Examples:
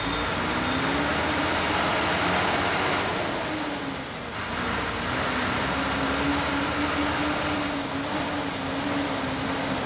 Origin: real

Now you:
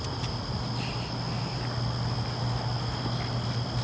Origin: real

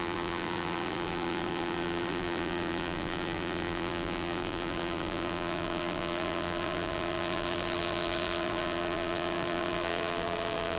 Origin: fake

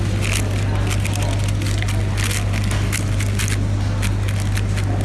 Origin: real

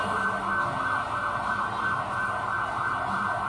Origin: real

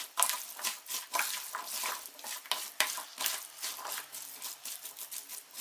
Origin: real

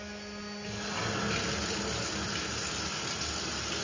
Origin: real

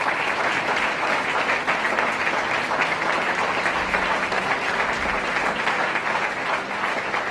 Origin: real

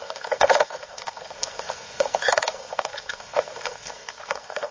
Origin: fake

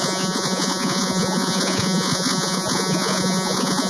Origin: fake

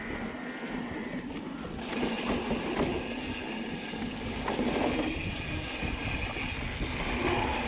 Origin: real